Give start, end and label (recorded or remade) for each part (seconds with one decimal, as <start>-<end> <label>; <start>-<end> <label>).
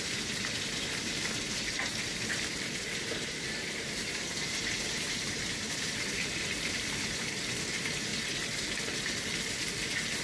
0.0-8.1 remade; 8.1-10.2 recorded